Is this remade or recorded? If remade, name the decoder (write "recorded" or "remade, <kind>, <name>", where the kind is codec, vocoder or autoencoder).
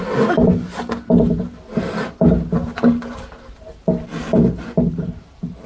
recorded